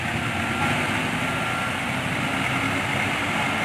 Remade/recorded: recorded